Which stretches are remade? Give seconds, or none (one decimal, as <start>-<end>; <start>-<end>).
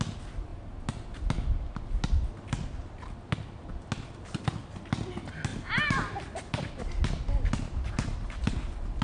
none